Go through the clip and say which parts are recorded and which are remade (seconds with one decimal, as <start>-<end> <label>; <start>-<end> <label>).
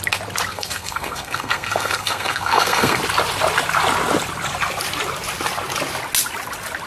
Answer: 0.0-0.5 recorded; 0.5-3.0 remade; 3.0-6.9 recorded